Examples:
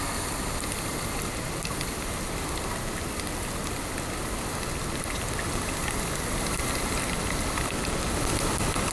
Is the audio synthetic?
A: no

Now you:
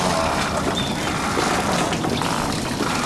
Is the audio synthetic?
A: no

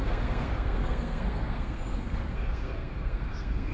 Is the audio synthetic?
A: yes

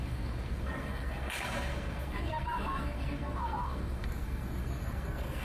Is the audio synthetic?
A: yes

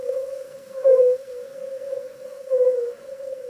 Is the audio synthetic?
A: yes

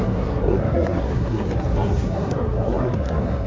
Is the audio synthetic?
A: yes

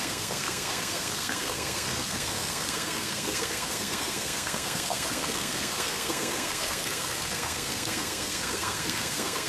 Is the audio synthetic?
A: yes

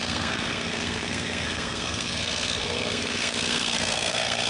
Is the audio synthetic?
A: yes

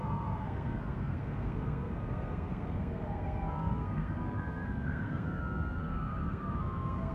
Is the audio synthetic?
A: yes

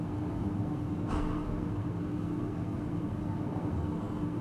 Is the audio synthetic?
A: yes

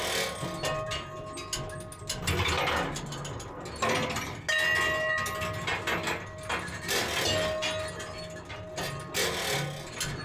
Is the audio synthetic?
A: no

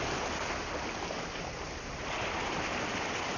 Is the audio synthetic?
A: no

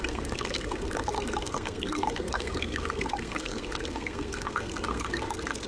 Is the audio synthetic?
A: yes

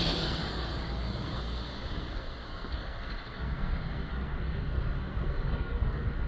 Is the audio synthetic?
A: yes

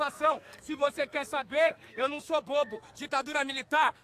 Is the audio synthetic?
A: yes